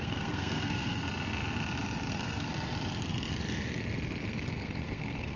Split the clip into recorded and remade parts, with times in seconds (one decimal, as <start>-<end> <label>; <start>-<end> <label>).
0.0-1.0 remade; 1.0-2.1 recorded; 2.1-2.5 remade; 2.5-4.3 recorded; 4.3-5.4 remade